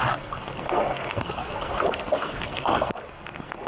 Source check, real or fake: fake